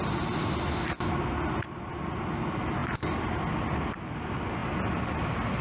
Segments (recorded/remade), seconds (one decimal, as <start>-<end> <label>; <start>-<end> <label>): 0.0-5.6 recorded